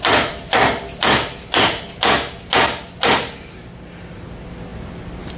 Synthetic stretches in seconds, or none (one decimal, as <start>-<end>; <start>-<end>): none